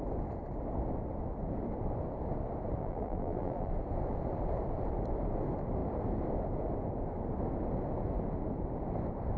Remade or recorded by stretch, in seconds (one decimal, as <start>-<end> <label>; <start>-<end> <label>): 0.0-2.8 recorded; 2.8-3.7 remade; 3.7-9.4 recorded